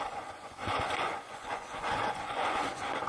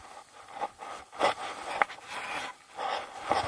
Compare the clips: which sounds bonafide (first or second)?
second